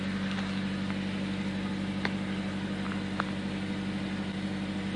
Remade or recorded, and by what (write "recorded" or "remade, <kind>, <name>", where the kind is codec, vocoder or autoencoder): recorded